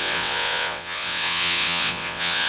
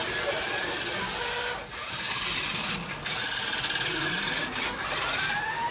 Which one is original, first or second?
second